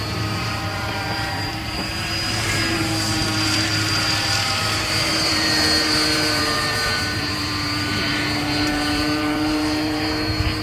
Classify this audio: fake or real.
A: fake